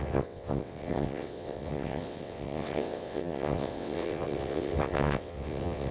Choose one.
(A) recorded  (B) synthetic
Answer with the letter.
B